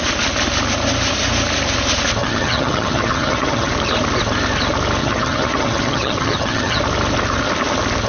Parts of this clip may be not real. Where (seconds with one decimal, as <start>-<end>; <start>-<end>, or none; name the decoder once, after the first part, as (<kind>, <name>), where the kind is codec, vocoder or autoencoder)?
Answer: 2.2-3.7 (vocoder, HiFi-GAN); 5.0-6.8